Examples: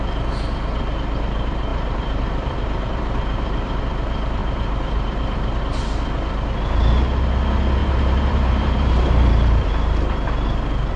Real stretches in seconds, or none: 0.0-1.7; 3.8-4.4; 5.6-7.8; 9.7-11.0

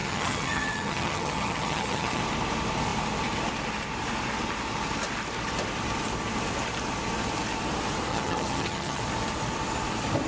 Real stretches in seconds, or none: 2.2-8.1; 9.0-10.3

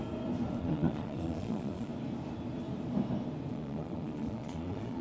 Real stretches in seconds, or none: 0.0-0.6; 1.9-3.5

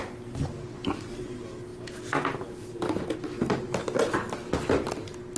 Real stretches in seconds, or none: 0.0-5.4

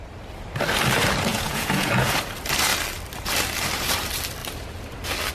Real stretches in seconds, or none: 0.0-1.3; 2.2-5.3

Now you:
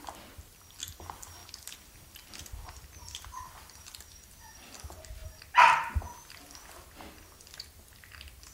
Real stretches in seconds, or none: 0.0-8.5